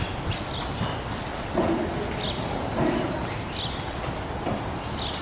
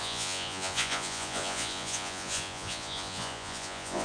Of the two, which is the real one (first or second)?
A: first